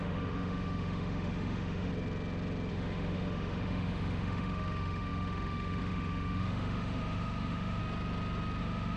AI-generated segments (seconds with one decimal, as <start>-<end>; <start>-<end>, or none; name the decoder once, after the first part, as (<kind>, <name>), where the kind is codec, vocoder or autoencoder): 0.0-1.9 (autoencoder, DAC-VAE); 2.7-7.8; 8.6-9.0